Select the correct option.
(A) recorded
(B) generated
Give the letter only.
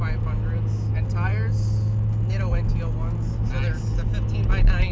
A